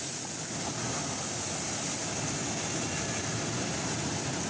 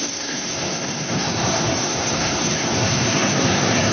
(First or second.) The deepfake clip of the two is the second